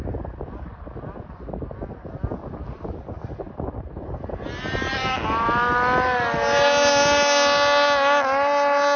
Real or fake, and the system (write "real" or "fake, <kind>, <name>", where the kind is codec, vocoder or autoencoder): real